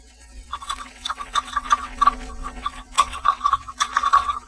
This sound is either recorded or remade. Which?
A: remade